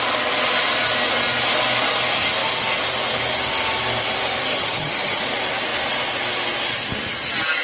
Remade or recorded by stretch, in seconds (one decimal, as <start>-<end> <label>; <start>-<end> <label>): 0.0-4.5 recorded; 4.5-5.2 remade; 5.2-7.6 recorded